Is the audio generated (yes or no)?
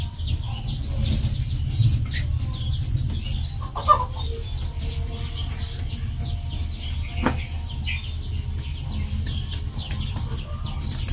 no